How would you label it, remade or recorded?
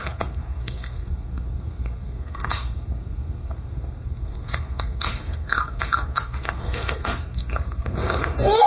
remade